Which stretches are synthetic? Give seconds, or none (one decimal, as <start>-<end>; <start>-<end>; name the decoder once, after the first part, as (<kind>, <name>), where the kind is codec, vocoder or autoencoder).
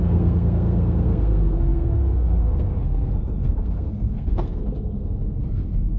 0.0-6.0 (codec, SNAC)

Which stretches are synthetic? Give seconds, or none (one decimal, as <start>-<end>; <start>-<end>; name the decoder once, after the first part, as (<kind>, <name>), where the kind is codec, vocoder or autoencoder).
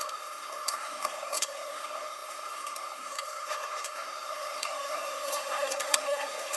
0.0-6.6 (codec, SNAC)